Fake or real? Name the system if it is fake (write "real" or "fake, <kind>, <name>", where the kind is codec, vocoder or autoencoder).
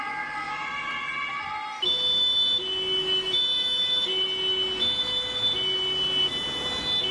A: real